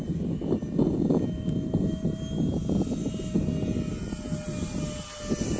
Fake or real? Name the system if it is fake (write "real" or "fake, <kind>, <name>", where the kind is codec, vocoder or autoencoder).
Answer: real